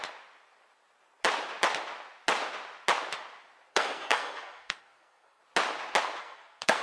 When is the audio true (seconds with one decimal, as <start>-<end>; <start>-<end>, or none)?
0.0-3.7; 5.4-6.2